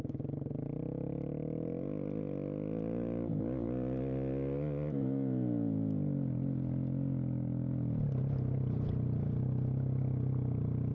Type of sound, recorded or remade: recorded